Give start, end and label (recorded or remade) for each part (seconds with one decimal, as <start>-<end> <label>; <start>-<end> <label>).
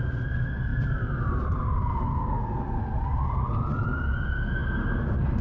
0.0-5.4 recorded